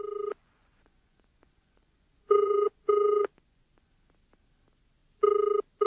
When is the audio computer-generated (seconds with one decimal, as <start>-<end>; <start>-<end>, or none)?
0.4-3.9